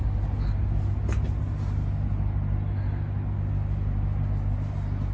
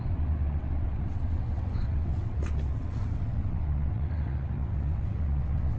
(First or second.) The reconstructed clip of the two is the second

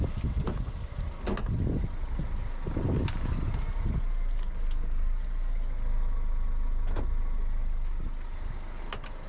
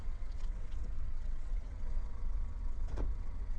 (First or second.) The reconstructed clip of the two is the second